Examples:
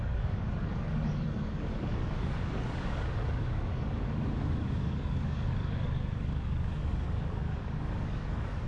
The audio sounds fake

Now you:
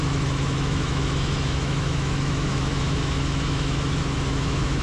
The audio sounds fake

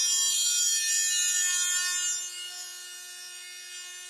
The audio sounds real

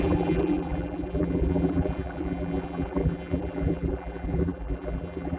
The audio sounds fake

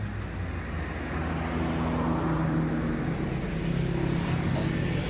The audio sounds real